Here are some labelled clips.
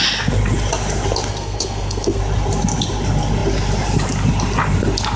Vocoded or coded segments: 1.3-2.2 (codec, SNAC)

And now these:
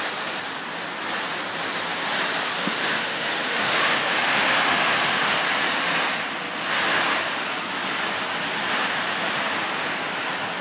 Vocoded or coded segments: 2.6-5.4 (autoencoder, DAC-VAE)

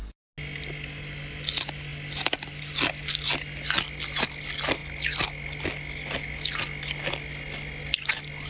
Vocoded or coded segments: none

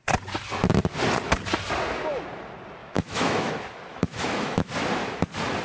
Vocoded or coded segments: 2.8-3.5 (autoencoder, DAC-VAE); 3.9-4.7

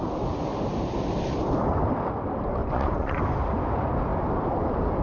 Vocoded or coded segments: 2.6-3.2 (vocoder, Vocos)

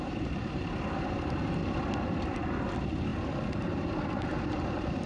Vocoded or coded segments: 0.0-1.6 (vocoder, BigVGAN v2); 2.6-5.1